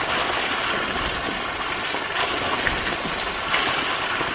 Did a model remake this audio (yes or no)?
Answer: no